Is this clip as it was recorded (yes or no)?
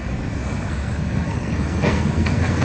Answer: no